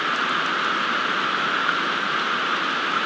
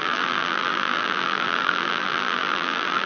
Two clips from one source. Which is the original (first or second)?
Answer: first